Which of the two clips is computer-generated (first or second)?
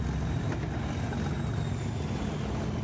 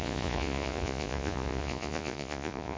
second